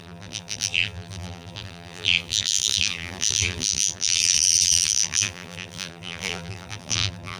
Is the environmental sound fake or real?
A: fake